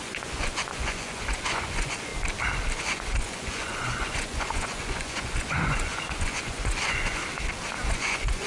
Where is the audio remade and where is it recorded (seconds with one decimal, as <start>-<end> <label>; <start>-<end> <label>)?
0.0-2.1 remade; 2.1-2.8 recorded; 2.8-7.2 remade; 7.2-7.9 recorded; 7.9-8.5 remade

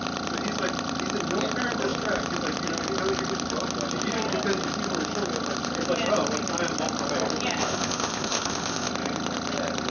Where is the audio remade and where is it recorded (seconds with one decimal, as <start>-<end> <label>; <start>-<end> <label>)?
0.0-7.6 recorded; 7.6-8.9 remade; 8.9-9.9 recorded

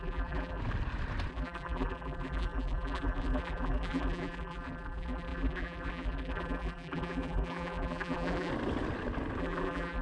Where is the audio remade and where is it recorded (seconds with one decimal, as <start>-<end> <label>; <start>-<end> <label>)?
0.0-0.6 remade; 0.6-1.3 recorded; 1.3-8.5 remade; 8.5-9.4 recorded; 9.4-10.0 remade

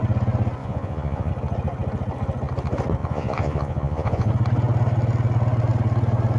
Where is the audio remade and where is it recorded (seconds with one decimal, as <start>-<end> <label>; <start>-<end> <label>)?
0.0-0.6 recorded; 0.6-1.3 remade; 1.3-3.0 recorded; 3.0-4.3 remade; 4.3-6.4 recorded

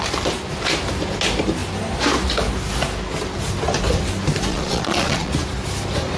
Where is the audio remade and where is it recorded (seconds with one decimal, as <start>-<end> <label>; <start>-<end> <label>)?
0.0-4.5 recorded; 4.5-5.3 remade; 5.3-6.2 recorded